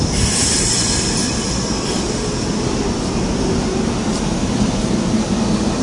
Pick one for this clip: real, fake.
real